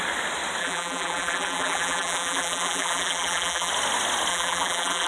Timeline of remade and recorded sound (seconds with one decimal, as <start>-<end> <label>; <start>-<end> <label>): 0.0-0.6 recorded; 0.6-3.7 remade; 3.7-4.3 recorded; 4.3-5.1 remade